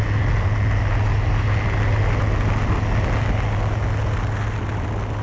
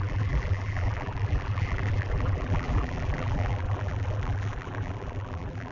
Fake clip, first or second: second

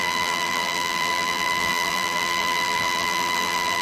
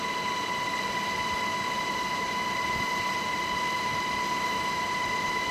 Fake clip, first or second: first